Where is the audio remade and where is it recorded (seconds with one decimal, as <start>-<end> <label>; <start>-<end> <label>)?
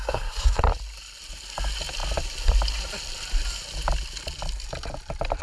0.0-0.6 remade; 0.6-5.4 recorded